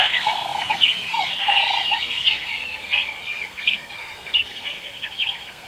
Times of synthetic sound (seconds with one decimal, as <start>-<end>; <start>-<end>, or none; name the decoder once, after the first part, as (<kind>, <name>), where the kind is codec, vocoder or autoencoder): 0.0-5.7 (codec, SNAC)